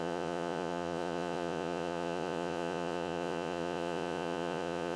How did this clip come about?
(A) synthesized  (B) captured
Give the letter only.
A